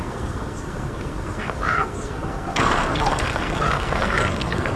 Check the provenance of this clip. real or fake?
fake